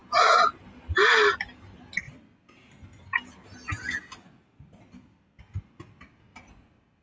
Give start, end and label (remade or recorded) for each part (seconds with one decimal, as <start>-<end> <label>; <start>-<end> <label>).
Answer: 0.0-7.0 recorded